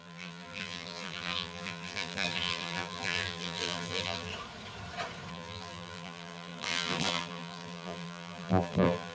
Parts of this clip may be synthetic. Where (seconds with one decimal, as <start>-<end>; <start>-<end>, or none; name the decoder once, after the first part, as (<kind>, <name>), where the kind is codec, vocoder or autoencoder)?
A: 0.0-4.3 (vocoder, BigVGAN v2); 5.3-9.1